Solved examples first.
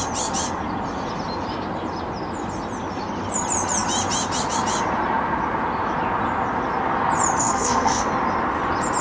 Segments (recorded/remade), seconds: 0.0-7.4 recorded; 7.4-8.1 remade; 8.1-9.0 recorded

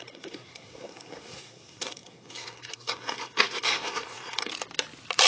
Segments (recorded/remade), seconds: 0.0-4.5 remade; 4.5-5.3 recorded